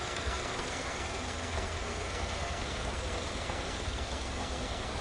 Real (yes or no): no